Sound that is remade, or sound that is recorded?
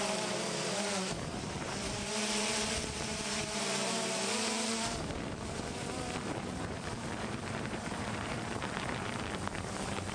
remade